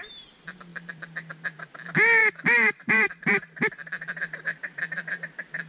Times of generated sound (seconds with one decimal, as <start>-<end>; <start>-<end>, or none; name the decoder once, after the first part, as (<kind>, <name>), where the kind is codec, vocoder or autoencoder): 0.7-1.3 (vocoder, BigVGAN v2); 2.2-4.8